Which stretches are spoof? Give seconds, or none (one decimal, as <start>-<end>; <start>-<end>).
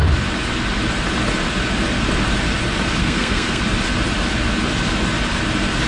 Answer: 3.0-3.6